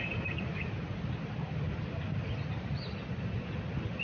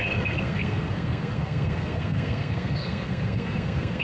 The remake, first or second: second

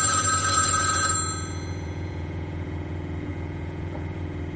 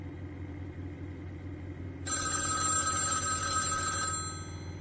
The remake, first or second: first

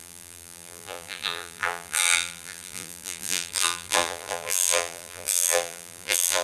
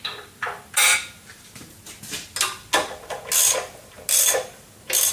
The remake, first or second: first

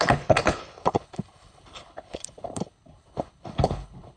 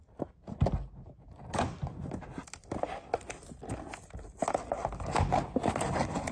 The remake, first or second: first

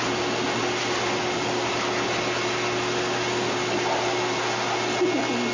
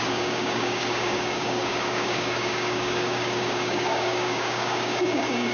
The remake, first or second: second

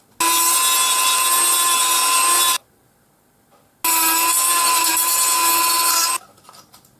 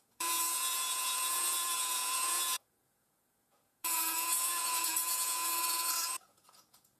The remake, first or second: second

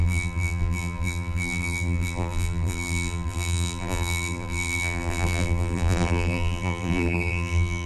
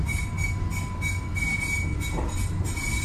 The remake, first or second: first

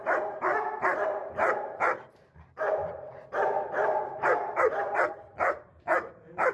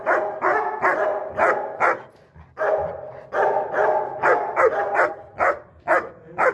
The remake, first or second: first